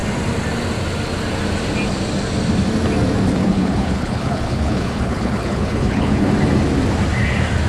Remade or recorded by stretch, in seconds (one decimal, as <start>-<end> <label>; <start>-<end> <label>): 0.0-3.4 recorded; 3.4-6.3 remade; 6.3-7.7 recorded